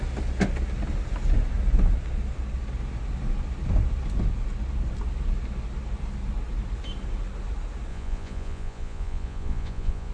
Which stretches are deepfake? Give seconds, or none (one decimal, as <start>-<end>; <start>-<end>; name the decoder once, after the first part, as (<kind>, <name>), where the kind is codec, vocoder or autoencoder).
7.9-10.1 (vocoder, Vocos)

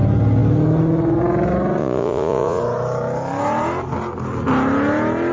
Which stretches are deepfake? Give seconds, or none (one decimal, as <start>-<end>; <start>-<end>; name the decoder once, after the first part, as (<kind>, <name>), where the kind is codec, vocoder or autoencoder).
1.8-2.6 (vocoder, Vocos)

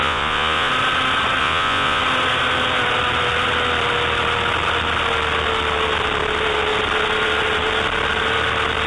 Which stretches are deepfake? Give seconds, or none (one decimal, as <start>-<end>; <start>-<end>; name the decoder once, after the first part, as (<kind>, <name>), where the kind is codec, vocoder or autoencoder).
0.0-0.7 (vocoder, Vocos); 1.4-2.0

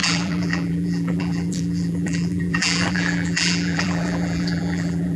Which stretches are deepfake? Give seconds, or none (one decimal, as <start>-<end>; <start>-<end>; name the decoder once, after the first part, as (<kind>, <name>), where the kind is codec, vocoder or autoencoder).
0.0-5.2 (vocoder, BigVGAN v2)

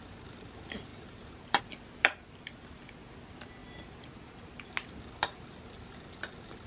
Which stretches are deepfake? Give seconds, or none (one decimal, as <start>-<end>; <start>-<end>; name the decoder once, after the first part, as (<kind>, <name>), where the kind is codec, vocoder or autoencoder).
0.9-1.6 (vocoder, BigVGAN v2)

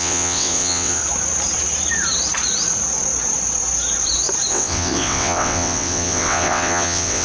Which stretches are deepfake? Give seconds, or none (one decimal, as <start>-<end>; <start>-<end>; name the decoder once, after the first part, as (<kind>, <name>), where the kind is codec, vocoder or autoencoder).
0.0-1.0 (vocoder, WaveNeXt); 4.5-7.2